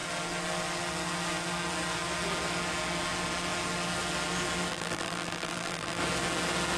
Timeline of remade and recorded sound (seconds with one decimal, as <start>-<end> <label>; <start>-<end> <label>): 0.0-4.7 recorded; 4.7-6.0 remade; 6.0-6.8 recorded